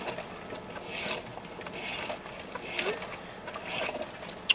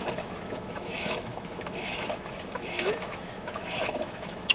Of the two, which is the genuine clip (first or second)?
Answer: first